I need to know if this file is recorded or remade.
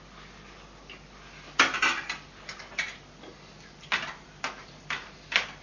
recorded